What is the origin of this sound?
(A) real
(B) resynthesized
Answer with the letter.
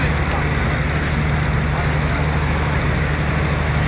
A